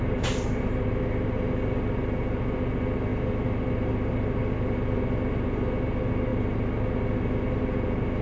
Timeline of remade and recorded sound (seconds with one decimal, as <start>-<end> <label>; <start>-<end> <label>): 0.0-8.2 recorded